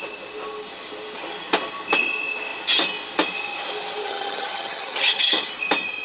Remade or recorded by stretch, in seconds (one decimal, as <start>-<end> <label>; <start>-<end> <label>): 0.0-4.0 recorded; 4.0-5.5 remade; 5.5-6.0 recorded